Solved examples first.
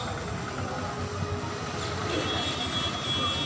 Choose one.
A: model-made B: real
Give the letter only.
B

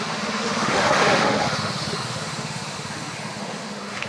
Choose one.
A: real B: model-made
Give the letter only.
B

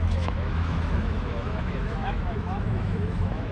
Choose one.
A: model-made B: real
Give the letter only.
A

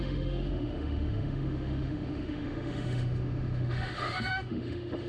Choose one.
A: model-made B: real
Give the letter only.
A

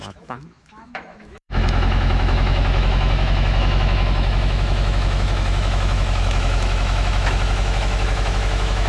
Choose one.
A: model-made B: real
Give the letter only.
A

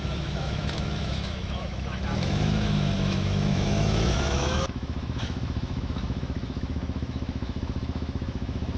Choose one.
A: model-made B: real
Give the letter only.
A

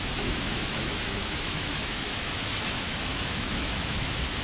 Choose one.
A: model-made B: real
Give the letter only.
A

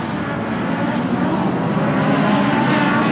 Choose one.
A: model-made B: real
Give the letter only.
B